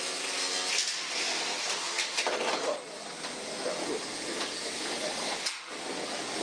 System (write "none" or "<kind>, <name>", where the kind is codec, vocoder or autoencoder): none